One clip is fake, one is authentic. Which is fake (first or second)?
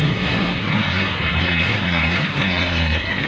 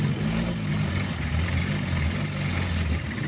first